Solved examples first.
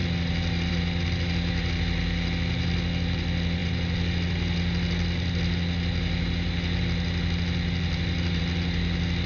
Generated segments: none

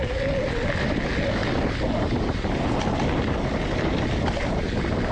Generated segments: none

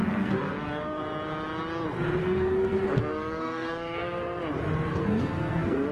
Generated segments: 0.0-1.0 (codec, SNAC); 2.2-4.4; 4.9-5.9

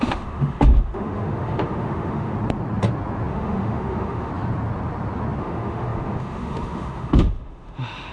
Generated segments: 0.0-2.3 (autoencoder, DAC-VAE); 3.3-4.3; 5.4-8.1

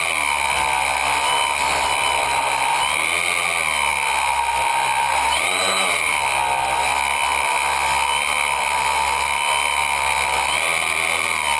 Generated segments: 5.1-6.1 (vocoder, BigVGAN v2)

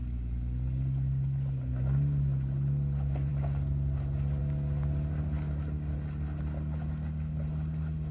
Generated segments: none

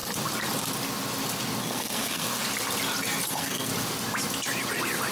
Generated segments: 1.6-2.4 (codec, SNAC); 3.3-3.7

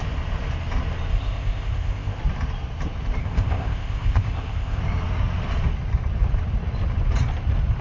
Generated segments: 1.1-2.2 (codec, ZipCodec); 3.2-4.8